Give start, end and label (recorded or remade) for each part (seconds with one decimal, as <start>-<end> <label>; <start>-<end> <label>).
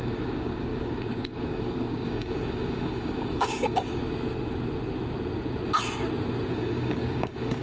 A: 0.0-4.0 remade; 4.0-6.5 recorded; 6.5-7.6 remade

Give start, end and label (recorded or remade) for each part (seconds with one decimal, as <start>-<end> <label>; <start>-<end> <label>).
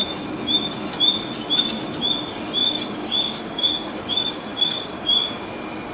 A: 0.0-2.6 recorded; 2.6-5.4 remade; 5.4-5.9 recorded